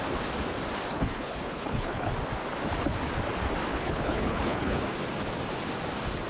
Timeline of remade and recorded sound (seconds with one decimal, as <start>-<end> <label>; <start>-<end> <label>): 0.0-0.9 recorded; 0.9-2.1 remade; 2.1-3.7 recorded; 3.7-4.8 remade; 4.8-6.3 recorded